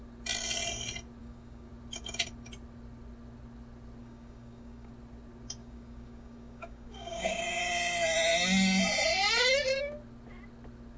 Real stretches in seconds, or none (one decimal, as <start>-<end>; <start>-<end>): 0.0-1.2; 1.7-4.0; 4.9-5.6; 7.4-11.0